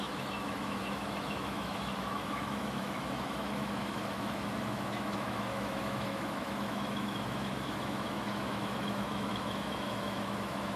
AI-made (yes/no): yes